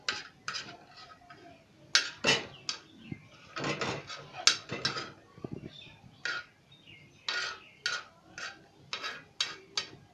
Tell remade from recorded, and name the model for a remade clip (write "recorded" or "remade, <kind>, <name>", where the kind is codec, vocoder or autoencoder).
recorded